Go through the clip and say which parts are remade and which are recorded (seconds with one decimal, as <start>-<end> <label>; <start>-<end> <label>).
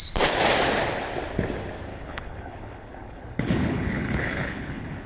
0.0-1.9 recorded; 1.9-5.1 remade